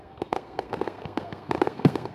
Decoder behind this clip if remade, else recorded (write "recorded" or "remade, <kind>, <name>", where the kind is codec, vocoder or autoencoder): remade, codec, SNAC